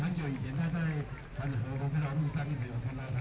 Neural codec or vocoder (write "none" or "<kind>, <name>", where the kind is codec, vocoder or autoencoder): none